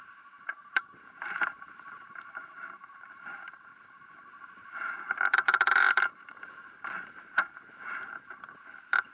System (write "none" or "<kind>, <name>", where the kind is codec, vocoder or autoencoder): vocoder, BigVGAN v2